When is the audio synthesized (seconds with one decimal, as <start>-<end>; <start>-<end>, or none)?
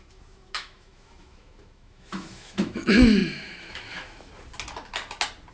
0.0-4.3